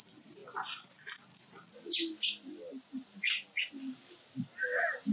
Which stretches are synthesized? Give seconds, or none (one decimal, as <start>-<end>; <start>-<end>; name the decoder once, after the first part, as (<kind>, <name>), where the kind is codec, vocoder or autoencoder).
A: none